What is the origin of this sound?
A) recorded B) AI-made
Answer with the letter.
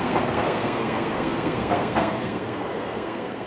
B